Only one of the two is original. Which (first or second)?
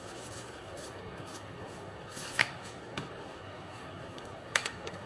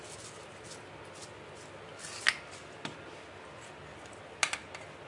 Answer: second